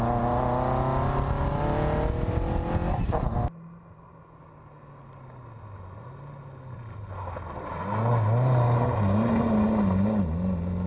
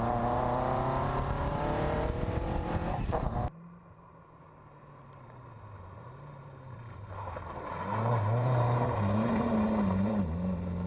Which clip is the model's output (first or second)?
second